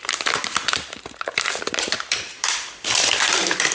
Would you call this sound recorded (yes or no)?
no